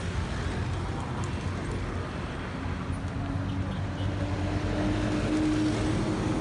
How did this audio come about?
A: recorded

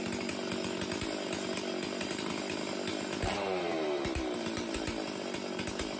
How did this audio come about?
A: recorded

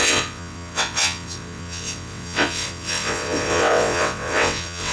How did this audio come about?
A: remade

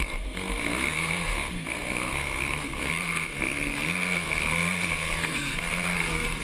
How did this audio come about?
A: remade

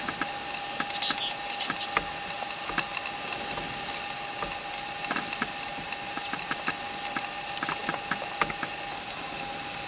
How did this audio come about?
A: recorded